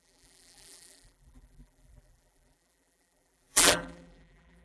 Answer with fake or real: fake